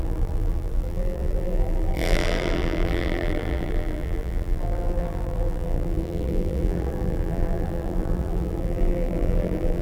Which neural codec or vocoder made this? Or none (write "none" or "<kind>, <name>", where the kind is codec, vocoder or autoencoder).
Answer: vocoder, BigVGAN v2